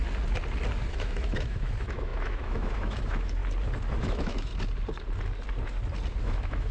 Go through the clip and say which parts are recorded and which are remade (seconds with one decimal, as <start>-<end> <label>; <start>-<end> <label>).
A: 0.0-0.9 recorded; 0.9-3.4 remade; 3.4-4.0 recorded; 4.0-4.5 remade; 4.5-6.2 recorded; 6.2-6.7 remade